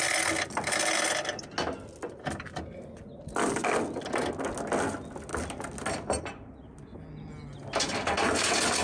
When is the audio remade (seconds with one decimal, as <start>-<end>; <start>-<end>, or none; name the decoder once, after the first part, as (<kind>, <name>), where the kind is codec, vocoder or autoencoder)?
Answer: none